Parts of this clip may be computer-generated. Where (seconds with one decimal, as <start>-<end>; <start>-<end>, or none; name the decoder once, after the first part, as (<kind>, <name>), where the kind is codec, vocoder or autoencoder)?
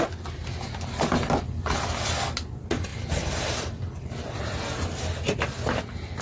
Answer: 2.9-4.4 (vocoder, BigVGAN v2)